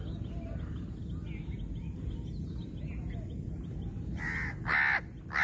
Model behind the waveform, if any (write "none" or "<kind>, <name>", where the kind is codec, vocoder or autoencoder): none